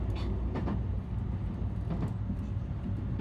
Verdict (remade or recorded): recorded